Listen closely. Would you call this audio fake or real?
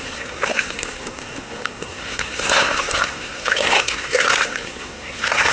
fake